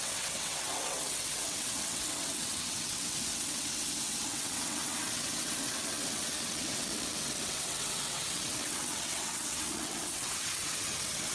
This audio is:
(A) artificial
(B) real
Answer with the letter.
A